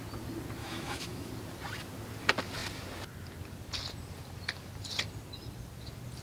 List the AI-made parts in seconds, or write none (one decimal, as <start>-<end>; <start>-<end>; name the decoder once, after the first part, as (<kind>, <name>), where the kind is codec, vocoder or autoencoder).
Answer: 0.6-1.3 (autoencoder, DAC-VAE)